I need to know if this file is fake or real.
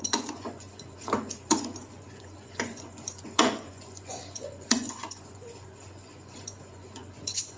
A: fake